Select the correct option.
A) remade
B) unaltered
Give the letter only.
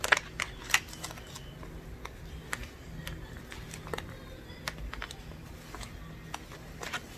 B